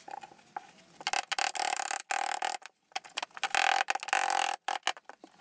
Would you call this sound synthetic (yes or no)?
no